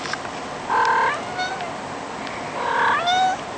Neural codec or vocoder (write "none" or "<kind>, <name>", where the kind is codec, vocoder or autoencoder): none